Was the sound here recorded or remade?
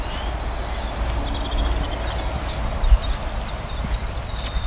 recorded